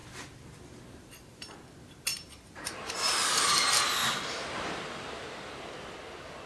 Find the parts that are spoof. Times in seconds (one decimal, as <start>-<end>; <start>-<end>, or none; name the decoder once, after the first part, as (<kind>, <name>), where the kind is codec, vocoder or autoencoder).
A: 0.0-1.5 (vocoder, BigVGAN v2); 2.1-3.4; 4.0-5.6